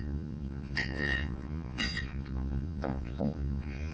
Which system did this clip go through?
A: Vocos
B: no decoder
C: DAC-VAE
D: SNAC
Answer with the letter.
A